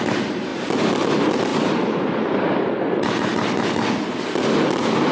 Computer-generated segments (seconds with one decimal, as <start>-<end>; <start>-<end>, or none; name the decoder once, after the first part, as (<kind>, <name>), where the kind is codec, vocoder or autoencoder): none

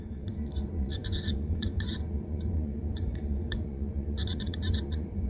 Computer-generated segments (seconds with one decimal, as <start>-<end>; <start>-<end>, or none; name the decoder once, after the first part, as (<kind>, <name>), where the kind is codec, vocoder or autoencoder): 0.0-5.3 (vocoder, Vocos)